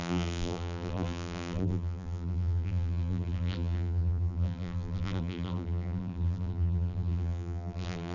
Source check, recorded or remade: remade